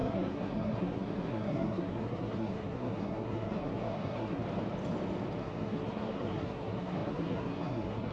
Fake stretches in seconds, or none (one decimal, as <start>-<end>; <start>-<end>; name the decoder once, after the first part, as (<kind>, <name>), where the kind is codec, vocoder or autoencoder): 0.0-4.4 (codec, SNAC); 5.4-8.1